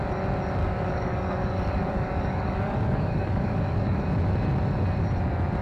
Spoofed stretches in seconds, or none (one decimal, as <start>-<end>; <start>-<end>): 0.6-4.0